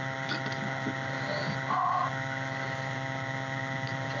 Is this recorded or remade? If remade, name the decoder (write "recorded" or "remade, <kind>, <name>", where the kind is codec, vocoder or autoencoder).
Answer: recorded